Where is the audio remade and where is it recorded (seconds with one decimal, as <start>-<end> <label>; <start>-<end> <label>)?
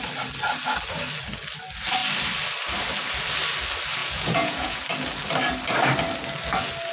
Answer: 0.0-4.0 recorded; 4.0-4.8 remade; 4.8-6.9 recorded